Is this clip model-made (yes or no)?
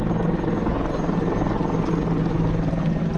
no